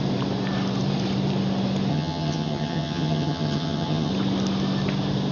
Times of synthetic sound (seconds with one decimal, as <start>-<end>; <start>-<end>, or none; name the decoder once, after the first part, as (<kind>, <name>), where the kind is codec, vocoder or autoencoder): 1.9-4.1 (vocoder, HiFi-GAN)